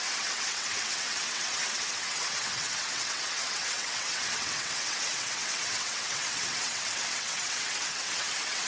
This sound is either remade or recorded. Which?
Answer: remade